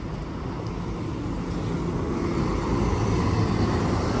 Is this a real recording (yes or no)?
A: yes